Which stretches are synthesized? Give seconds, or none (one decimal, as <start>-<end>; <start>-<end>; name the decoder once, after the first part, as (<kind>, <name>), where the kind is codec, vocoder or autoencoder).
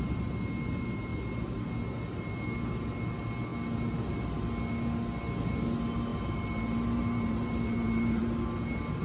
6.1-8.2 (vocoder, BigVGAN v2)